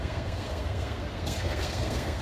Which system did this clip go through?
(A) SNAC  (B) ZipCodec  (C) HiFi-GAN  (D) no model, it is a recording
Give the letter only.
A